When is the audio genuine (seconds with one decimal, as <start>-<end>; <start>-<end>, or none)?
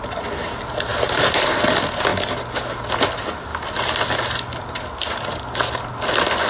0.0-6.5